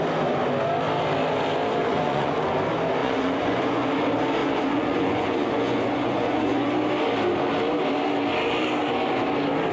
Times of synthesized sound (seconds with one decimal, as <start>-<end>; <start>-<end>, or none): 1.8-2.4; 3.0-3.9; 4.4-6.7